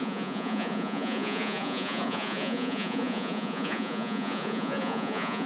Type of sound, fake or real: fake